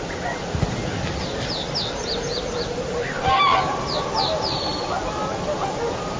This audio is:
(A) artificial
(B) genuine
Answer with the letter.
B